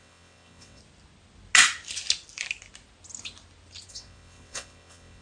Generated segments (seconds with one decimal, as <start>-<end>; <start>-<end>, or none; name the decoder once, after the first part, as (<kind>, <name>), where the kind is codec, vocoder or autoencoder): 0.0-0.8 (vocoder, WaveNeXt); 3.9-5.2